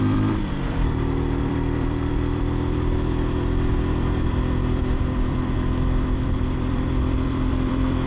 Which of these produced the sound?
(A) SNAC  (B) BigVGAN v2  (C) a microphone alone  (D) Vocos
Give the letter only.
B